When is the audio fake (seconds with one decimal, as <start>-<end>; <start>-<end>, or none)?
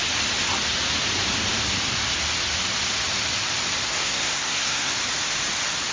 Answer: 3.9-4.9